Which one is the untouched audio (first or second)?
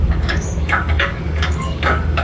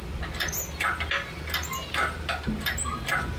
second